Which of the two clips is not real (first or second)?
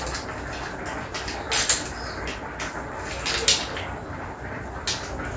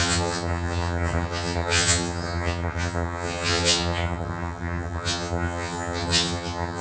second